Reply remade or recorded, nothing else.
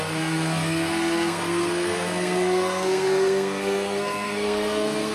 remade